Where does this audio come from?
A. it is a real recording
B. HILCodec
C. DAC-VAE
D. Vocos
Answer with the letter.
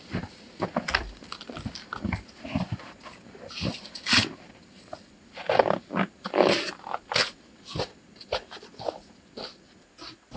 A